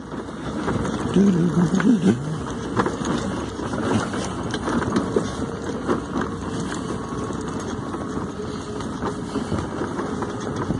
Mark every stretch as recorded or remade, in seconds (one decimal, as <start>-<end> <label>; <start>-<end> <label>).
0.0-10.8 recorded